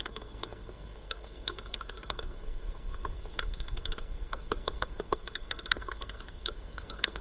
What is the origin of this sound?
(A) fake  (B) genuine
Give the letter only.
A